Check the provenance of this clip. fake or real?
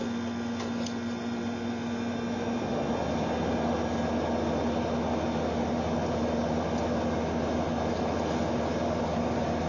real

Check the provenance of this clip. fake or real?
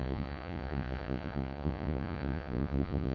fake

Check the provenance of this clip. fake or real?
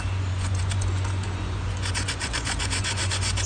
fake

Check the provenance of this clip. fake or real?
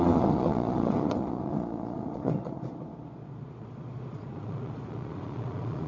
fake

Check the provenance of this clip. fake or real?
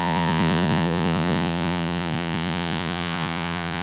fake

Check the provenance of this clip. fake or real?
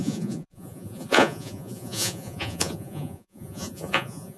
fake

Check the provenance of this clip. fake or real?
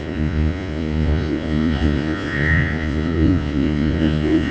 fake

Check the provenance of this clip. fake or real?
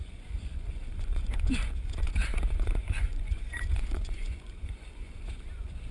fake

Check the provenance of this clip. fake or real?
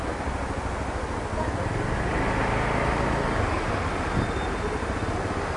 real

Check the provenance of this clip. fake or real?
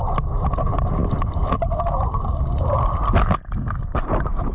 real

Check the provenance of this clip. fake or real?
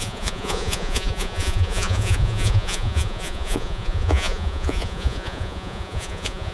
fake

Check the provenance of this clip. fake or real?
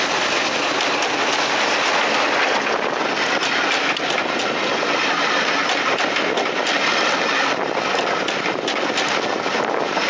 real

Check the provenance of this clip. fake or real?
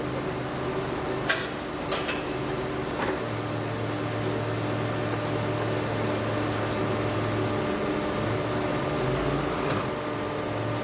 real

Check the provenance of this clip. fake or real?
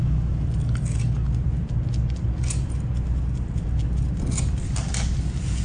real